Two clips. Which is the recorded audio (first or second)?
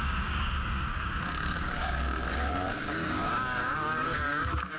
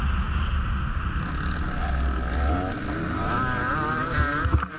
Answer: second